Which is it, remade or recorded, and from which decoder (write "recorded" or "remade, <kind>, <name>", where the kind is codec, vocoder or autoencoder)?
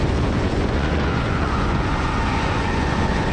remade, vocoder, Vocos